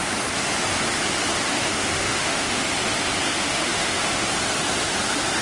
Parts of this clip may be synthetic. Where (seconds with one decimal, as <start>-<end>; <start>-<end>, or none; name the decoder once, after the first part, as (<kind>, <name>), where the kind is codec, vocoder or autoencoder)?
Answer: 1.5-2.6 (autoencoder, DAC-VAE); 3.3-4.3